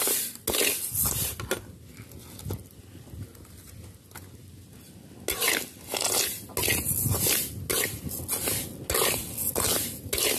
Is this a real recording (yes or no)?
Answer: yes